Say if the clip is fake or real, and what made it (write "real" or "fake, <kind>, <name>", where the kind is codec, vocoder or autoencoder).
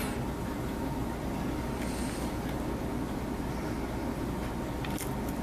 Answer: real